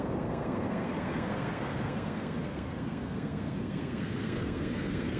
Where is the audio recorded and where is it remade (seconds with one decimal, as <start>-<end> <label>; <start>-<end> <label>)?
0.0-5.2 remade